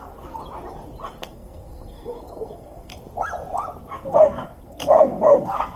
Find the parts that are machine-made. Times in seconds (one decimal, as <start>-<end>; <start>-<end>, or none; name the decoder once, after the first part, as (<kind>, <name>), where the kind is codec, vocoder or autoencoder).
0.0-0.4 (codec, SNAC); 1.2-2.9; 3.9-5.8